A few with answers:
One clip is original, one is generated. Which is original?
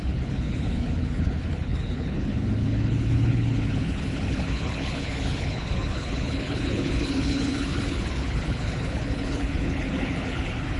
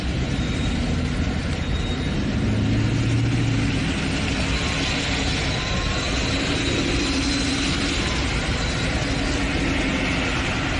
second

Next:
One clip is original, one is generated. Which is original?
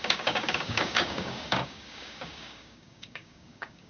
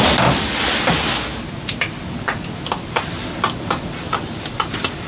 second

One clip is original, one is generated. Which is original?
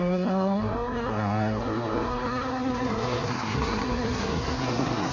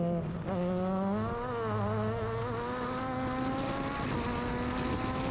second